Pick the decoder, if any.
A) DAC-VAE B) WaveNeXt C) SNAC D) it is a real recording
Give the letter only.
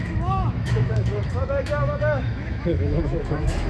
A